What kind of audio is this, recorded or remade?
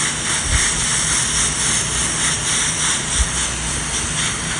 recorded